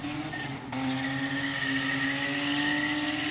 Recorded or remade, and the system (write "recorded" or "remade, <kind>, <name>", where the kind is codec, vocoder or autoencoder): recorded